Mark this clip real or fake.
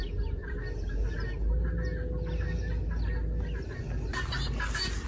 real